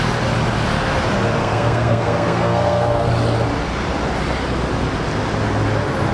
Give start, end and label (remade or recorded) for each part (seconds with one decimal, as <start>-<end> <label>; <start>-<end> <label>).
0.0-1.4 recorded; 1.4-3.1 remade; 3.1-6.1 recorded